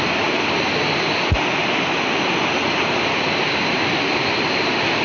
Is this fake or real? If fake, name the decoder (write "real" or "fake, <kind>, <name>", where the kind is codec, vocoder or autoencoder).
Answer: real